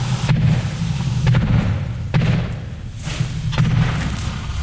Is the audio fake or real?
real